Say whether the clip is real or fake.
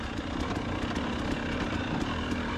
real